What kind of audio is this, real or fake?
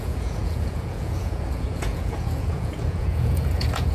fake